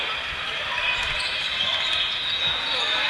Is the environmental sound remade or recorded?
recorded